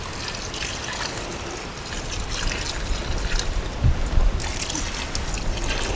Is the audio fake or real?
real